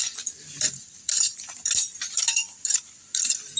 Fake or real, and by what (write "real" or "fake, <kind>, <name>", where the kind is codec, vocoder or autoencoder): fake, vocoder, BigVGAN v2